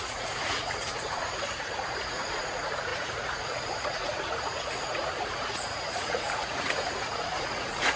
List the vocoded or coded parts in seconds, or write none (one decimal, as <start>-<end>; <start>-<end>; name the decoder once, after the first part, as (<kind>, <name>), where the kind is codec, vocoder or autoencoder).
0.0-8.0 (vocoder, Vocos)